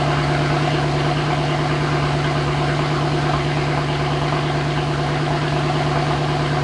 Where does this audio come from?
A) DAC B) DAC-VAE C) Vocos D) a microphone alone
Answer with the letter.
D